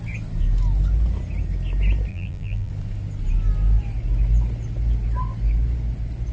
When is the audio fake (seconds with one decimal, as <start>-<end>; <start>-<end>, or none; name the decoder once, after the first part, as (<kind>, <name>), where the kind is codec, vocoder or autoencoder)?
2.1-2.7 (vocoder, BigVGAN v2)